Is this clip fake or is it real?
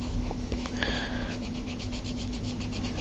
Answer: fake